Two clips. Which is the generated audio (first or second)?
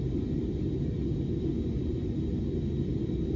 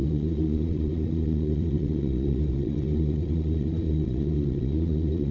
second